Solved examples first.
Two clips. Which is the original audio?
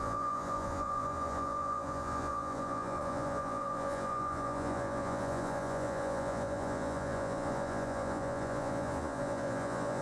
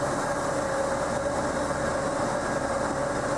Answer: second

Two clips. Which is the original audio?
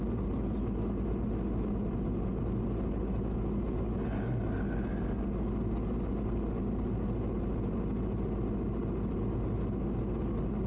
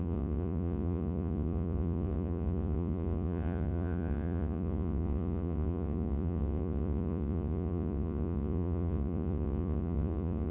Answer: first